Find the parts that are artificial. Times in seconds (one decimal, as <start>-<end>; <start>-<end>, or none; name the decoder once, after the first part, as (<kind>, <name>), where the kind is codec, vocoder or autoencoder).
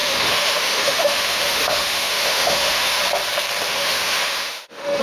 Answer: 0.0-3.0 (autoencoder, DAC-VAE); 3.7-5.0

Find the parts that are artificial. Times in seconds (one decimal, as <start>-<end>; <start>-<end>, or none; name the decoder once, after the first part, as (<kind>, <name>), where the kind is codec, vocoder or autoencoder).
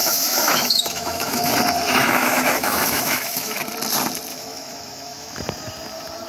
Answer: 0.0-1.5 (autoencoder, DAC-VAE); 2.0-3.6; 4.3-5.4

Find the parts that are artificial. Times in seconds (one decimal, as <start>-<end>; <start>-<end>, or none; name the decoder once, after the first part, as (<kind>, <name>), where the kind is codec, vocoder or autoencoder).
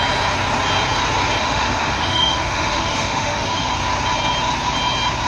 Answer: 1.4-3.7 (autoencoder, DAC-VAE)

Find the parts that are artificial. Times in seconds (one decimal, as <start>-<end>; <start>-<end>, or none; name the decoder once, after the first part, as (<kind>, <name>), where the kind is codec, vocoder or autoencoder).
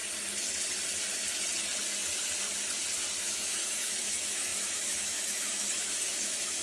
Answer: 3.2-6.6 (autoencoder, DAC-VAE)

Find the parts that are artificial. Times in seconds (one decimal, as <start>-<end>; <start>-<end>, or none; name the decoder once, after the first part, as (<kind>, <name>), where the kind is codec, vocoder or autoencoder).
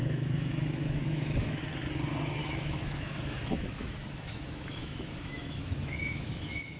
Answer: 0.0-1.6 (autoencoder, DAC-VAE); 2.4-6.8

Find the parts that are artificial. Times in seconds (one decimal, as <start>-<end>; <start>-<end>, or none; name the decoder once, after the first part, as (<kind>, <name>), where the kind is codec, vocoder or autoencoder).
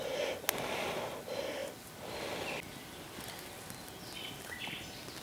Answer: none